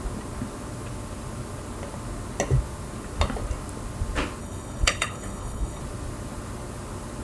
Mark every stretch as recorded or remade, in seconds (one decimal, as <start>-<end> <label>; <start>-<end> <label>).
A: 0.0-4.4 recorded; 4.4-5.8 remade; 5.8-7.2 recorded

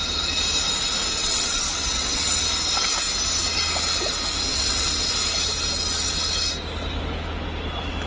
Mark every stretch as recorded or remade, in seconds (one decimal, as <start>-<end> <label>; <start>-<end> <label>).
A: 0.0-1.2 recorded; 1.2-2.3 remade; 2.3-4.5 recorded; 4.5-5.1 remade; 5.1-8.1 recorded

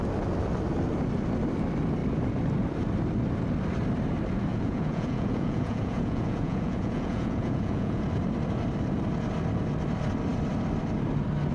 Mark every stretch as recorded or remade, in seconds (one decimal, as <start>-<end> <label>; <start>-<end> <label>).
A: 0.0-4.5 recorded; 4.5-8.0 remade; 8.0-11.5 recorded